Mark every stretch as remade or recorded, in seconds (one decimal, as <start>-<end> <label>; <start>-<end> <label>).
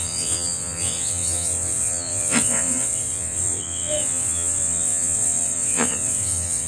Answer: 0.0-6.7 remade